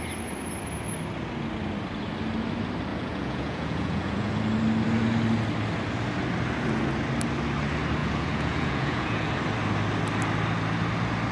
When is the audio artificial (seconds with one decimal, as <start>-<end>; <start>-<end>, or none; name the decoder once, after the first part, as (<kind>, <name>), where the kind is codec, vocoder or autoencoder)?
2.9-4.3 (vocoder, Vocos); 8.0-9.3